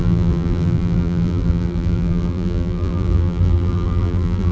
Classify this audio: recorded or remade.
remade